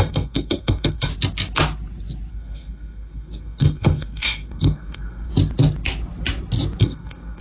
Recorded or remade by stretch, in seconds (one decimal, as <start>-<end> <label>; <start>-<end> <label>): 0.0-1.1 remade; 1.1-2.3 recorded; 2.3-5.3 remade; 5.3-6.8 recorded; 6.8-7.4 remade